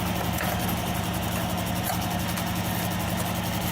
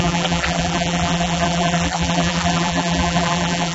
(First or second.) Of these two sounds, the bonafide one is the first